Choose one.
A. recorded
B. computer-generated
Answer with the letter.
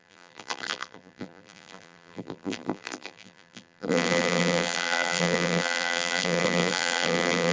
B